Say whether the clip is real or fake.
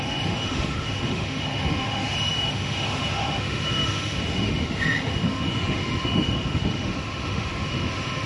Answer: fake